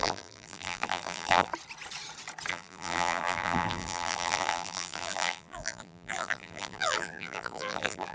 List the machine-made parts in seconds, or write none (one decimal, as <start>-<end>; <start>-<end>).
0.0-1.5; 2.5-8.1

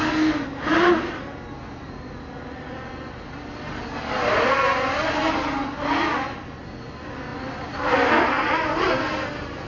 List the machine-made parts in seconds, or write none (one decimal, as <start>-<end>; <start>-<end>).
none